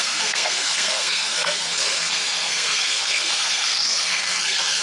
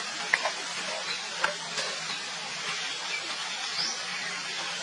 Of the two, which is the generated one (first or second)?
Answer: first